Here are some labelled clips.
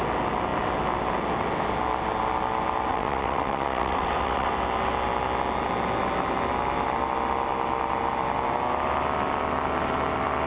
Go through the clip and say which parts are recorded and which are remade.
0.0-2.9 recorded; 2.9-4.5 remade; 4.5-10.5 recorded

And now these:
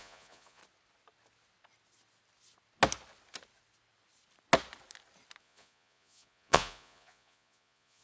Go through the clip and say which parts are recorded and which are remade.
0.0-0.6 remade; 0.6-5.4 recorded; 5.4-8.0 remade

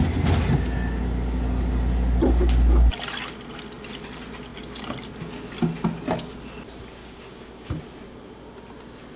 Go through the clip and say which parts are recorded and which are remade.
0.0-7.0 recorded; 7.0-7.8 remade; 7.8-9.2 recorded